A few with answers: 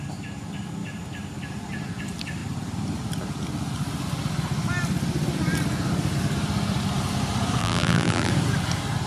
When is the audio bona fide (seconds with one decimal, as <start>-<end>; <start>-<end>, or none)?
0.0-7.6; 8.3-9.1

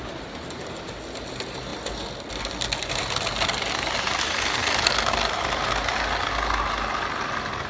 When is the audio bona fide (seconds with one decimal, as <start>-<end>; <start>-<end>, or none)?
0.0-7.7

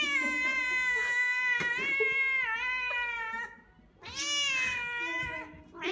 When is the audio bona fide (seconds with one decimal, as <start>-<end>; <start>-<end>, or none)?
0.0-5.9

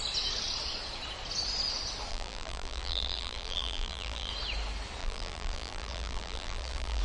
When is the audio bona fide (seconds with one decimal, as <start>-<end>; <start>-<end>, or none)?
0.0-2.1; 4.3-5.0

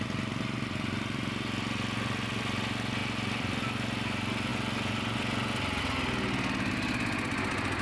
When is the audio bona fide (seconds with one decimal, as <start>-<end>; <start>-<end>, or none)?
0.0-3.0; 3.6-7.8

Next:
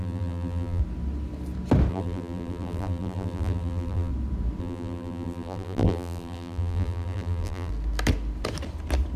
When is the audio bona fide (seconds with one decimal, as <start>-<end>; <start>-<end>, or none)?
0.8-1.9; 4.1-4.6; 7.7-9.2

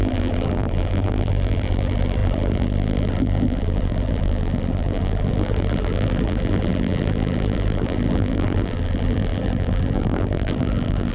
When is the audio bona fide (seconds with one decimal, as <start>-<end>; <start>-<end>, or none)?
none